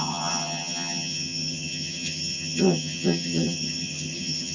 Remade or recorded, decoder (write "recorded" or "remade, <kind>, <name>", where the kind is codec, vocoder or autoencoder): remade, vocoder, HiFi-GAN